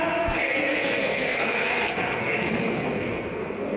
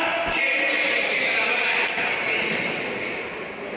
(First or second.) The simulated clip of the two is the first